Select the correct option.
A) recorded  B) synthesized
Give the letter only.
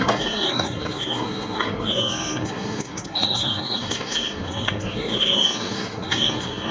B